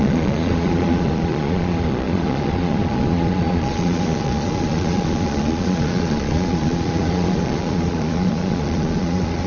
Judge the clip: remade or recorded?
remade